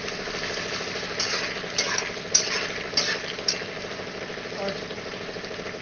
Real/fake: real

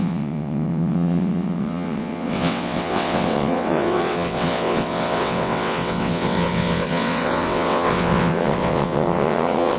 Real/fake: fake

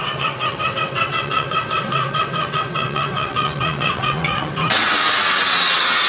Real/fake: fake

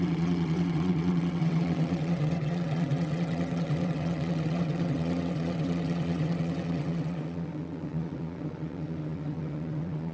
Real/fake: fake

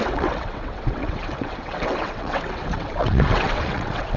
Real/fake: fake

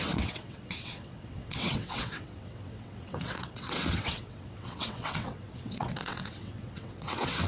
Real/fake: fake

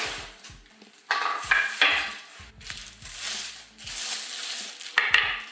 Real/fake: real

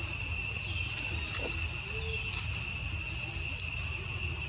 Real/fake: real